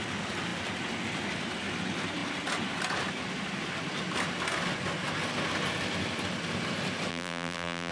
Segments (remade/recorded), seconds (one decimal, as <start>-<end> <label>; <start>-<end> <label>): 0.0-7.1 recorded; 7.1-7.9 remade